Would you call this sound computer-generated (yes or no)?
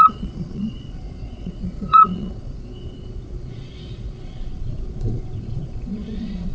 yes